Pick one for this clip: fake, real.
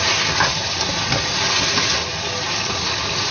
real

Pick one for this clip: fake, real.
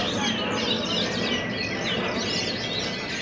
real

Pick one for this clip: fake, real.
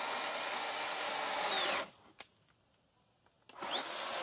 real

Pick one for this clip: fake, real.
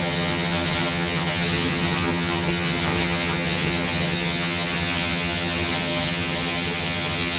fake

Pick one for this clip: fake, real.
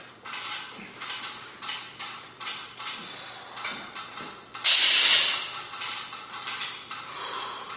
real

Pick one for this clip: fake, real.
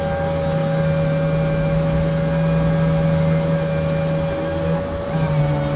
real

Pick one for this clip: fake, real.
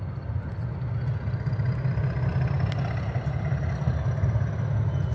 real